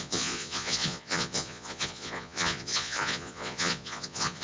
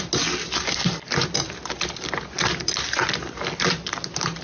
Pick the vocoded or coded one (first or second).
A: first